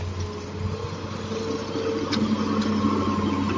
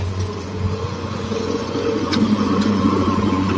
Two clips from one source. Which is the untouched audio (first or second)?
first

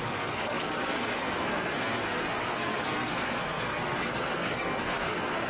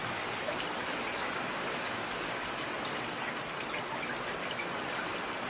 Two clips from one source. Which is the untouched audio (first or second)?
second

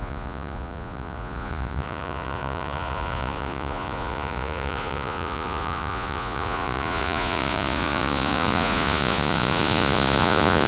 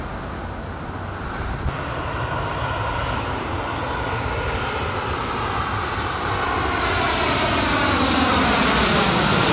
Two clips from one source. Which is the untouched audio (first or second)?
second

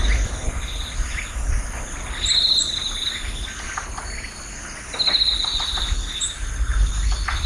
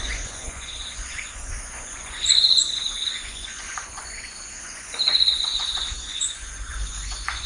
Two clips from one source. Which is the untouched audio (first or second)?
first